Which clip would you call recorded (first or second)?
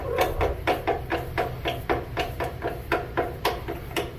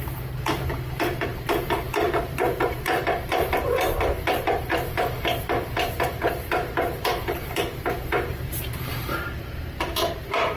first